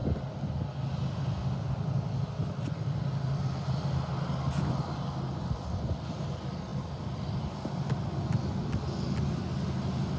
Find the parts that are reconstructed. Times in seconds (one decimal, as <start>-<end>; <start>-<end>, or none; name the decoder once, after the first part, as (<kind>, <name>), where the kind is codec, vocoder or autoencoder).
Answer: 6.7-8.2 (vocoder, BigVGAN v2)

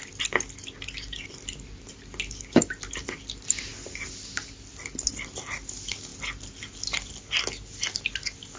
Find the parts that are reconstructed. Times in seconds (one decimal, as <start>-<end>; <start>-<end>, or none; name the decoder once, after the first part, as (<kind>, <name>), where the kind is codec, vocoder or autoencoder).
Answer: none